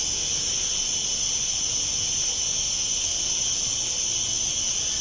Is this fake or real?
real